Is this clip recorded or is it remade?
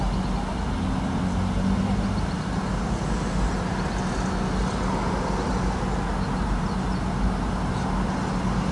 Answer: recorded